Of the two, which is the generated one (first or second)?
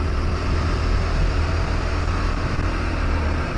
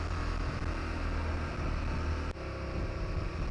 first